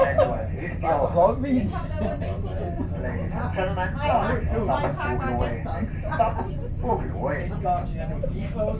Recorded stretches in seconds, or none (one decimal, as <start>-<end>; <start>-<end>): 0.0-8.8